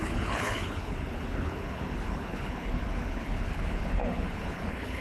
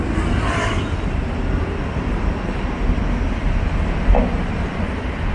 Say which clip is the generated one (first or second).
first